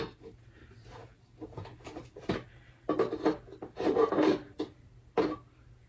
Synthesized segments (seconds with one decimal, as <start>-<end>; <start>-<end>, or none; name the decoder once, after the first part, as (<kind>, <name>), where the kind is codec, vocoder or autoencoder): none